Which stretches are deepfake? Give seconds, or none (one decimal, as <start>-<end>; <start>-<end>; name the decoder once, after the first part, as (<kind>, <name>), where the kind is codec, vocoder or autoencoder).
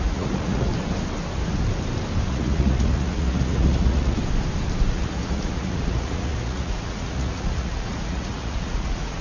0.0-0.7 (vocoder, Vocos); 2.3-4.2; 4.9-9.2